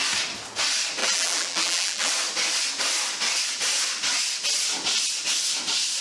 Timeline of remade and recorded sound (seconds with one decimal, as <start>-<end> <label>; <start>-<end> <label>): 0.0-1.0 recorded; 1.0-2.1 remade; 2.1-6.0 recorded